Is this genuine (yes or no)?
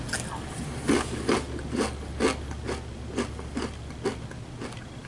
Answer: yes